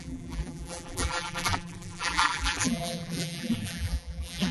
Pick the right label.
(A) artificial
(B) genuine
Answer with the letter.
A